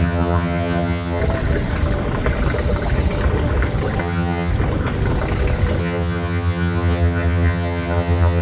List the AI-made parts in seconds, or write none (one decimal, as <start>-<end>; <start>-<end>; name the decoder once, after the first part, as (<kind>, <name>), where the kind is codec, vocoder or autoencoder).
0.0-1.2 (vocoder, HiFi-GAN); 4.0-4.5; 5.8-8.4